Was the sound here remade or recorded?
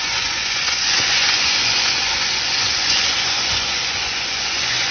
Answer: remade